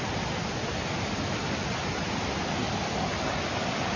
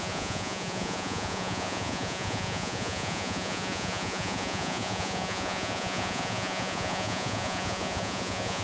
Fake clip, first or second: second